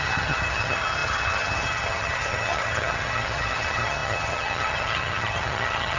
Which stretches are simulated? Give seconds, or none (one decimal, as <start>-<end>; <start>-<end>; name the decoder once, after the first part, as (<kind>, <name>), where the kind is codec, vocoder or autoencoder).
0.0-6.0 (vocoder, HiFi-GAN)